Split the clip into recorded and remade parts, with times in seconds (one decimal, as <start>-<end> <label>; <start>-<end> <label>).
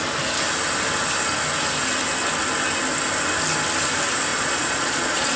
0.0-4.3 recorded; 4.3-5.4 remade